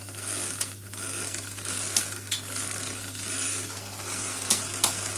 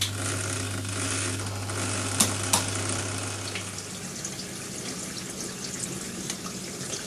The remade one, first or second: first